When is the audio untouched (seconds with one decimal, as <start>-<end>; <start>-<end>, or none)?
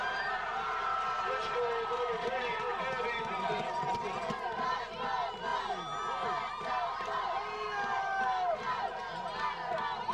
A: 0.0-10.1